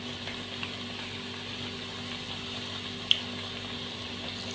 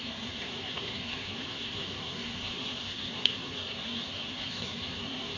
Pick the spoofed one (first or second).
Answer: second